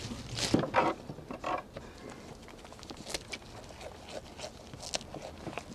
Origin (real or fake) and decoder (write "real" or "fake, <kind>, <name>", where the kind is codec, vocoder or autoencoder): real